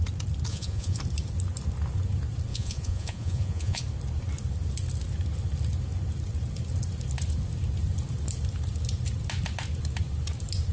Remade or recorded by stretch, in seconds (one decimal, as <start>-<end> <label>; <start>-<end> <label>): 0.0-0.5 recorded; 0.5-1.0 remade; 1.0-2.5 recorded; 2.5-3.8 remade; 3.8-10.7 recorded